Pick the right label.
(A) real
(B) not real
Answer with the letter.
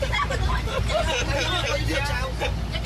A